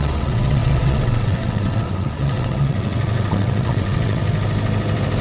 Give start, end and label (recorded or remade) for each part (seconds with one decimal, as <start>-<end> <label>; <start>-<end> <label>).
0.0-4.2 remade; 4.2-5.2 recorded